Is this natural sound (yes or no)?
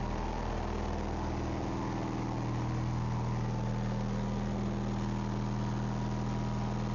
yes